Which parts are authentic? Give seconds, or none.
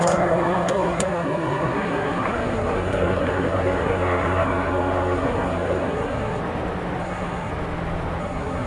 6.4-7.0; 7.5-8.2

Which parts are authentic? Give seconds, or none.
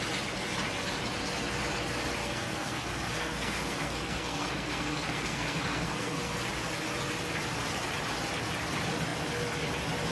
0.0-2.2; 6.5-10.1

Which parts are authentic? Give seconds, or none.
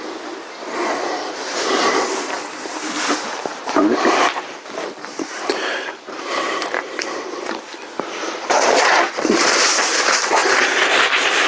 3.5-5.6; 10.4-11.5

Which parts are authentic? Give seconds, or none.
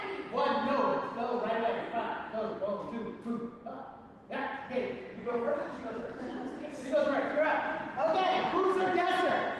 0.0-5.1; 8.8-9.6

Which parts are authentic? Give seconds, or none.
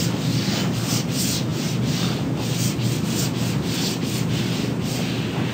0.0-5.5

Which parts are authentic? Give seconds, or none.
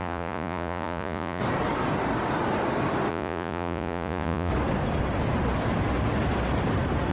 1.4-3.1; 4.5-7.1